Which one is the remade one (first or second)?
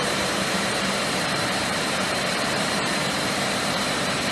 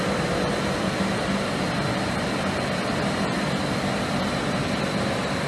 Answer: first